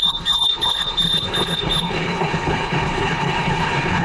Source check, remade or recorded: remade